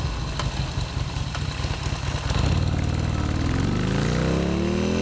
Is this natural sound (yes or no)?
yes